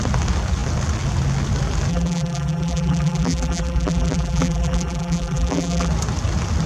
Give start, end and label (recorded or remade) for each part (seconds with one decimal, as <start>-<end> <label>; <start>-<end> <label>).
0.0-1.9 recorded; 1.9-5.9 remade; 5.9-6.7 recorded